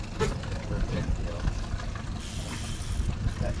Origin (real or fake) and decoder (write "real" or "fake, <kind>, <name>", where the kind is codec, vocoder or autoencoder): real